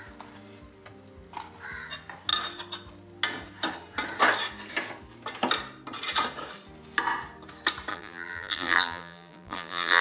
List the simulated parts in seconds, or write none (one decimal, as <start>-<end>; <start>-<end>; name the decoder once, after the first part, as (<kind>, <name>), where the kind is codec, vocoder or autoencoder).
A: 7.9-10.0 (vocoder, BigVGAN v2)